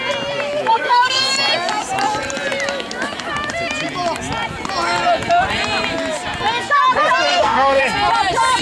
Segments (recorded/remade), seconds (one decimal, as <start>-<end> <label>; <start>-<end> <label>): 0.0-0.7 recorded; 0.7-1.3 remade; 1.3-7.3 recorded; 7.3-7.8 remade; 7.8-8.6 recorded